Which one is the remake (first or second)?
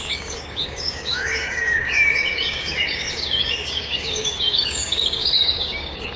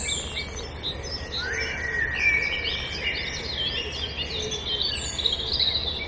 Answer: first